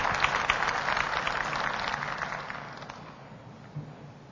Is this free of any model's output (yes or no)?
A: yes